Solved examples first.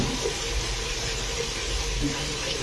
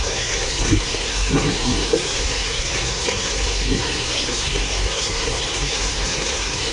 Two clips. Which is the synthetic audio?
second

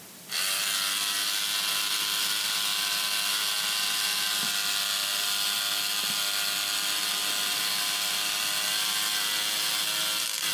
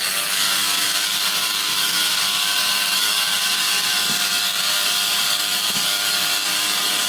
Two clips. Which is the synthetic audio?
second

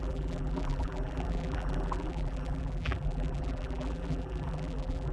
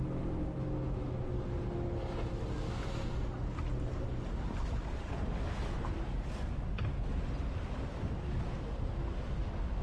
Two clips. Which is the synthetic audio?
first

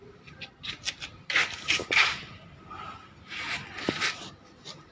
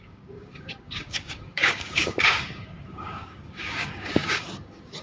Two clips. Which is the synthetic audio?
second